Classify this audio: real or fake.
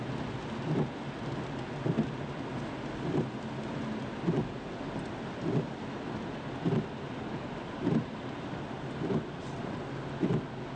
real